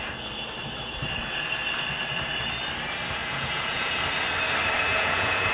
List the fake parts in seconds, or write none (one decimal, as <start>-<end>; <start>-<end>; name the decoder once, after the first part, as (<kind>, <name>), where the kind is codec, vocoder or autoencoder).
3.2-4.0 (vocoder, Vocos); 4.9-5.5